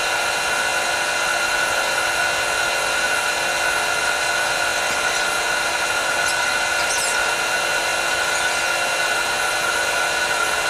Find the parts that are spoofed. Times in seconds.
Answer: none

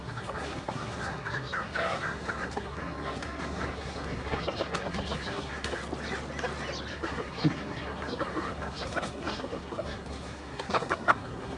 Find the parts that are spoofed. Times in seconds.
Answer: 0.0-5.8; 6.9-11.6

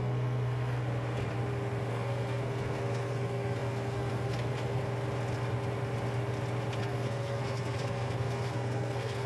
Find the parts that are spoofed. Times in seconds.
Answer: 0.0-0.8; 1.9-4.8; 6.8-9.3

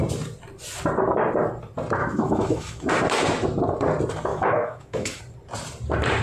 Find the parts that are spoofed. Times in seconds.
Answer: 2.0-2.9; 4.3-5.2

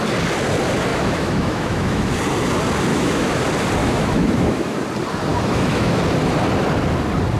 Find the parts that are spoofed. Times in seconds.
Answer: 0.9-2.1; 2.9-3.4; 3.8-4.8; 5.3-6.0

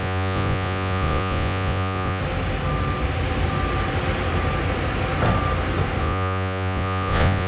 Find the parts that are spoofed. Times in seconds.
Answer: 0.0-2.2; 6.0-7.5